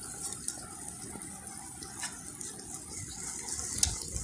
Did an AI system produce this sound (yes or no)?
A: no